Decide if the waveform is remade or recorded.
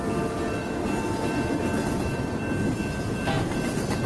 recorded